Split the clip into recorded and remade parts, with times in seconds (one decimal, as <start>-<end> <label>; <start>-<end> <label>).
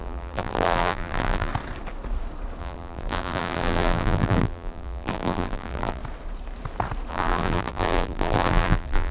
0.0-1.5 remade; 1.5-2.6 recorded; 2.6-6.0 remade; 6.0-7.1 recorded; 7.1-9.1 remade